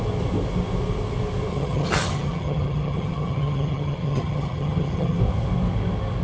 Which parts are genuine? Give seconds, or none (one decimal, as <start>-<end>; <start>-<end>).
0.0-1.5; 5.2-6.2